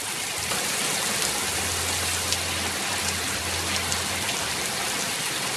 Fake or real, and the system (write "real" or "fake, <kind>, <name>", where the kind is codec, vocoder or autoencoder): real